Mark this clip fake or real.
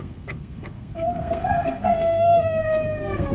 fake